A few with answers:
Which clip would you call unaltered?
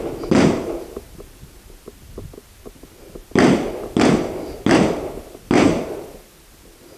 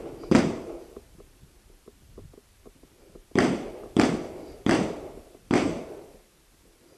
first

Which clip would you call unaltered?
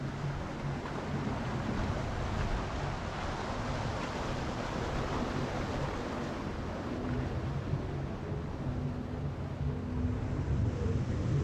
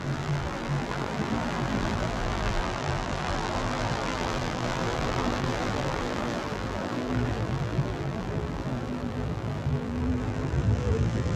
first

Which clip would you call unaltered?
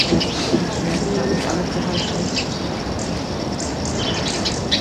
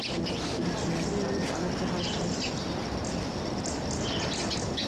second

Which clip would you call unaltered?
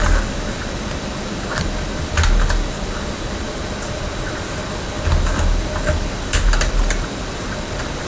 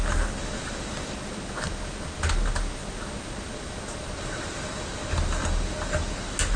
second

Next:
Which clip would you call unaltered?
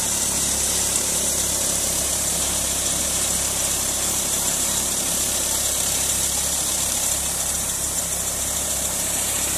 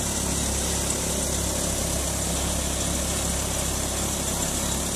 second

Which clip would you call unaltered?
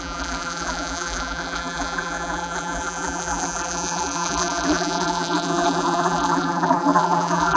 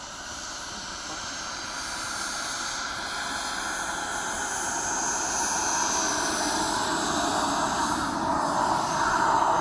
second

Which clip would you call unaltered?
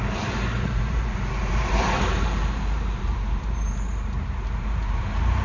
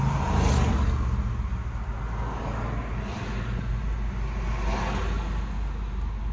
second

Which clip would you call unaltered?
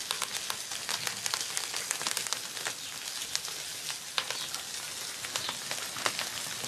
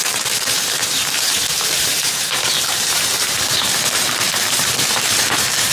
first